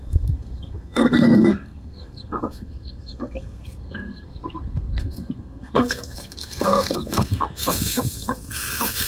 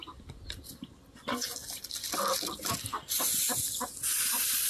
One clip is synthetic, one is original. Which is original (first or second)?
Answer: second